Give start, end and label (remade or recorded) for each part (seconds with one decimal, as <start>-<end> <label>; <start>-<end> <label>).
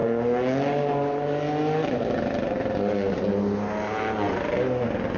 0.0-5.2 recorded